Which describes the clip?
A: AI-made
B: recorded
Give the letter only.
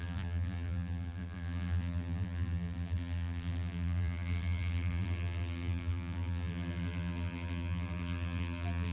A